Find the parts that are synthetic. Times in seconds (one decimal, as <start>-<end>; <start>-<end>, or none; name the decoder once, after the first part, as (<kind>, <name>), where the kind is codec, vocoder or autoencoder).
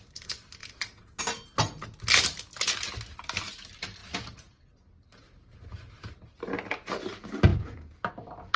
0.6-1.2 (vocoder, Vocos); 7.5-8.1